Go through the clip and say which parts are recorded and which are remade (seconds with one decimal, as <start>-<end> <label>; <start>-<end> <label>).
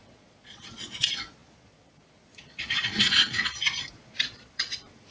0.0-5.1 remade